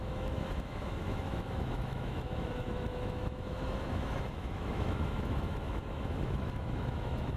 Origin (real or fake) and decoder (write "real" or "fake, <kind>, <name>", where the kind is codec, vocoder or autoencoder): fake, autoencoder, DAC-VAE